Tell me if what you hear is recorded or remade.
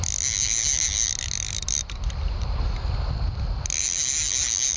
recorded